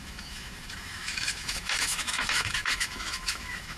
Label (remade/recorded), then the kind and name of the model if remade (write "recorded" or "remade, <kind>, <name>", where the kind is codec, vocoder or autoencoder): remade, autoencoder, DAC-VAE